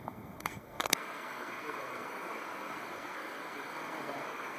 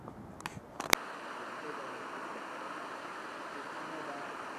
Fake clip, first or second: first